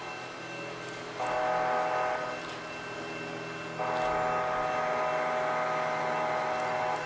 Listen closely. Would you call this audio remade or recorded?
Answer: recorded